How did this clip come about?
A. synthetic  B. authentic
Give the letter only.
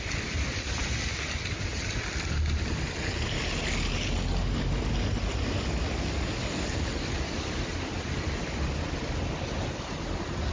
B